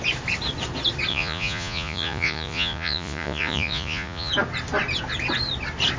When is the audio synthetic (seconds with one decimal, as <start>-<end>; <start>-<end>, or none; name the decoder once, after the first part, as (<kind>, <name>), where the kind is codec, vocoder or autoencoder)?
1.1-4.3 (vocoder, Vocos)